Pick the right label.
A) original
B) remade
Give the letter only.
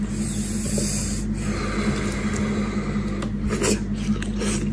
A